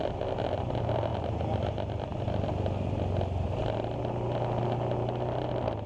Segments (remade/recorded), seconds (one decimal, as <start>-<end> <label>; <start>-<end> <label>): 0.0-5.9 recorded